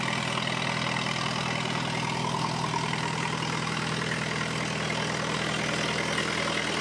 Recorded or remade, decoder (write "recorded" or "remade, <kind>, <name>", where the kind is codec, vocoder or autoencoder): recorded